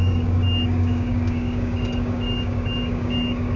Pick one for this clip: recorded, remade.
remade